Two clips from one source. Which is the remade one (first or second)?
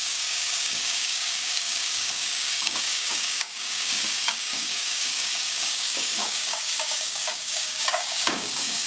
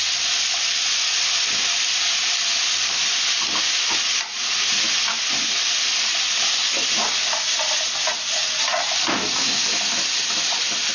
first